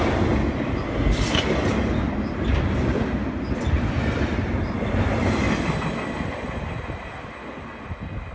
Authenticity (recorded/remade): recorded